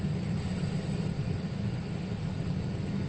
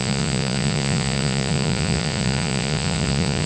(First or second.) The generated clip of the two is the second